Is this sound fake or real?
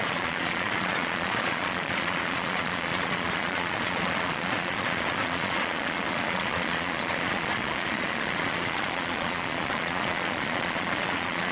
fake